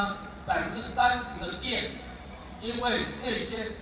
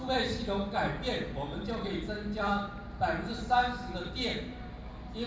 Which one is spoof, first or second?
first